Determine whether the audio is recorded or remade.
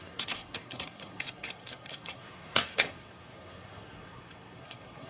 remade